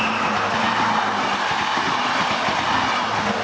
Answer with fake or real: real